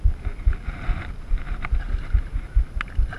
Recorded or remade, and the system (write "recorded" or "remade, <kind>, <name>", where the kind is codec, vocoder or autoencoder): recorded